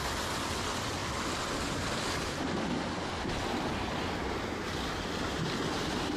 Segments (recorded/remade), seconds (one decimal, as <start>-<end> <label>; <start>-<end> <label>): 0.0-6.2 recorded

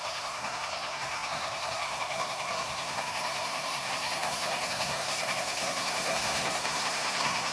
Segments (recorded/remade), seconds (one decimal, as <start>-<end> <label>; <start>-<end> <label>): 0.0-7.5 remade